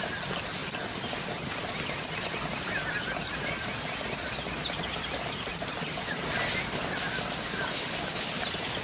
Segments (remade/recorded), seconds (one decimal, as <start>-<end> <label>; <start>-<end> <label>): 0.0-8.8 recorded